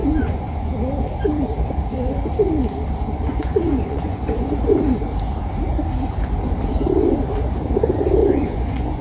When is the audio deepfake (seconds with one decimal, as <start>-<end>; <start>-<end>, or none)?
0.0-0.7; 3.3-4.5; 8.2-9.0